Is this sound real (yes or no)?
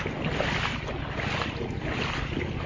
yes